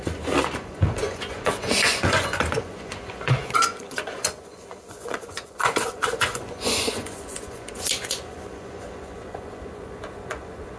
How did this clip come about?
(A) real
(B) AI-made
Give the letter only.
B